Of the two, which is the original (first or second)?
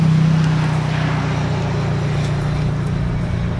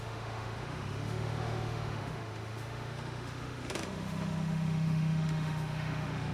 first